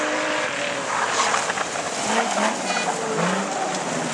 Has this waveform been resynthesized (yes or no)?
no